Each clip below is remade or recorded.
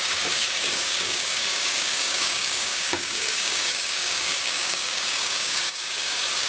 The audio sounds remade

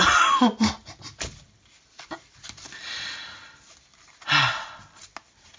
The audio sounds recorded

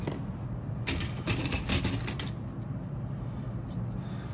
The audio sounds recorded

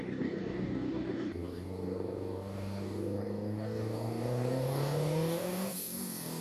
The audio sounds remade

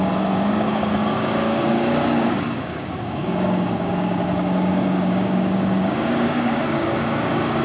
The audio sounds remade